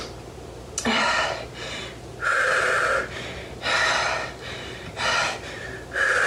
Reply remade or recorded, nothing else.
recorded